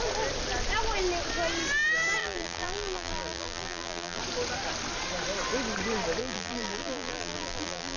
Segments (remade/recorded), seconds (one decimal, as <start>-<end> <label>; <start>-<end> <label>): 0.0-2.2 recorded; 2.2-4.2 remade; 4.2-6.2 recorded; 6.2-8.0 remade